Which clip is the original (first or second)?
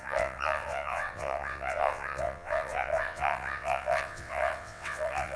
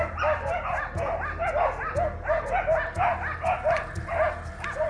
second